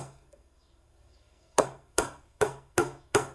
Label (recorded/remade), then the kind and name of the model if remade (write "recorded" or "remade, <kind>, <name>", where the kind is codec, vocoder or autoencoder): remade, codec, SNAC